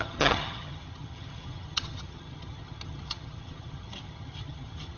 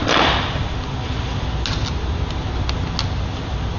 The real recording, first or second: second